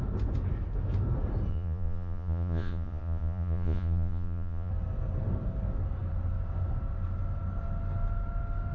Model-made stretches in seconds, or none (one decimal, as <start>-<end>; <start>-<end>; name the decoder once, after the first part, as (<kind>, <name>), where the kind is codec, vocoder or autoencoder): 1.5-4.7 (vocoder, Vocos)